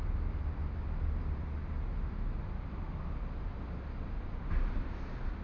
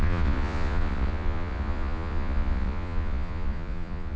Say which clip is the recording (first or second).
first